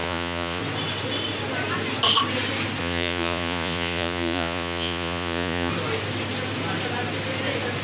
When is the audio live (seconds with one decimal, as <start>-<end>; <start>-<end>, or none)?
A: 0.6-2.8; 5.7-7.8